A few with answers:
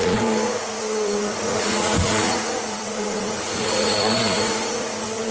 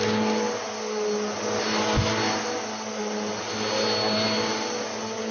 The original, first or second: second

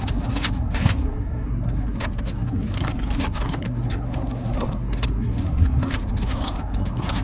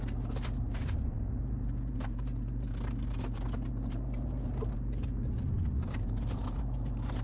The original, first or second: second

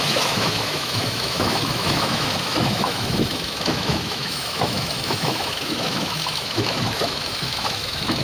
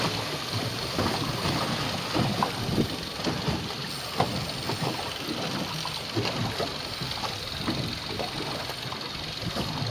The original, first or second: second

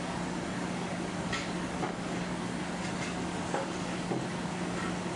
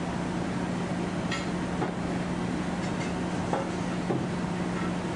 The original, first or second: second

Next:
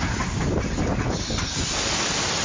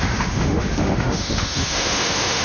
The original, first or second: first